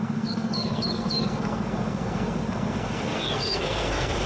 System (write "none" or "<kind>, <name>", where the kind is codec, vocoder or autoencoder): codec, SNAC